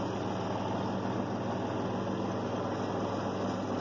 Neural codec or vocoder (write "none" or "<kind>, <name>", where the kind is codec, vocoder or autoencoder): none